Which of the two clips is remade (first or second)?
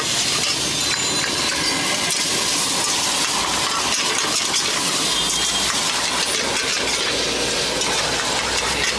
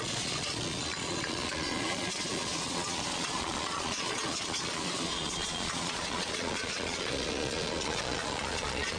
second